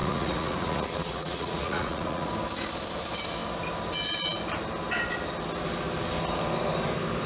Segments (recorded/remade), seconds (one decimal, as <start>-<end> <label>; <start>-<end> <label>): 0.0-2.3 remade; 2.3-7.3 recorded